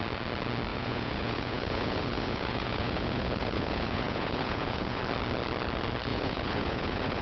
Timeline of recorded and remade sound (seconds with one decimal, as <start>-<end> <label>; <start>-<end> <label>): 0.0-0.7 recorded; 0.7-5.0 remade; 5.0-6.1 recorded; 6.1-7.2 remade